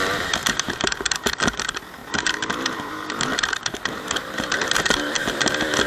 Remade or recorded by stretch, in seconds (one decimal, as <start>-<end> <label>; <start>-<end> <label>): 0.0-0.4 recorded; 0.4-1.6 remade; 1.6-2.0 recorded; 2.0-5.5 remade; 5.5-5.9 recorded